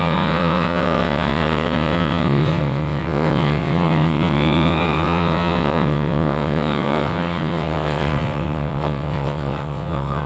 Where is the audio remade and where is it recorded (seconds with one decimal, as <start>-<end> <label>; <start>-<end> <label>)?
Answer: 0.0-10.3 remade